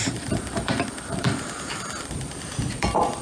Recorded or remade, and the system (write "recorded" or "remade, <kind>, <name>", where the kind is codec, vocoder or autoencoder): remade, vocoder, BigVGAN v2